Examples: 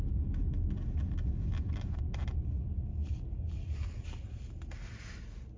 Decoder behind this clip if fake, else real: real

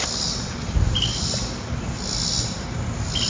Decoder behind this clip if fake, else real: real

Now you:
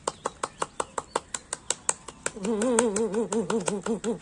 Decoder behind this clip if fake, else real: real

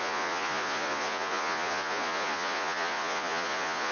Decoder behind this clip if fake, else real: fake, vocoder, Vocos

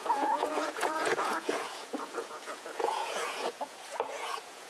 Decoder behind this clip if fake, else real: fake, vocoder, Vocos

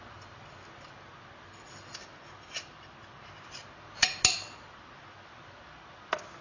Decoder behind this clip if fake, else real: real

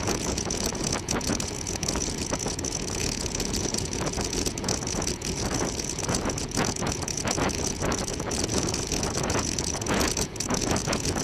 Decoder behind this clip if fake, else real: fake, vocoder, Vocos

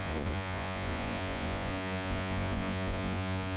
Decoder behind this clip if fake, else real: fake, vocoder, Vocos